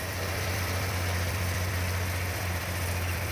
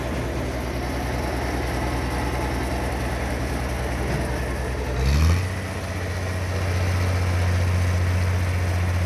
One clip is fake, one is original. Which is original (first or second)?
second